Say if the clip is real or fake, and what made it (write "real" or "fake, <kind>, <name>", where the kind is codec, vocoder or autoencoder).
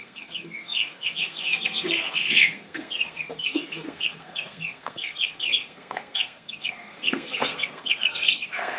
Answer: fake, codec, SNAC